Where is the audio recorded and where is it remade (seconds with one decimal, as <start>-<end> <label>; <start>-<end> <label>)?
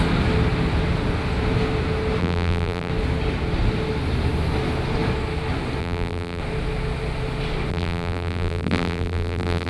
0.0-2.2 recorded; 2.2-2.9 remade; 2.9-5.8 recorded; 5.8-6.4 remade; 6.4-7.7 recorded; 7.7-9.7 remade